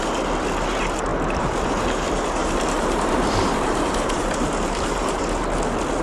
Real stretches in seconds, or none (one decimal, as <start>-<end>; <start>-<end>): 0.0-2.4; 5.2-6.0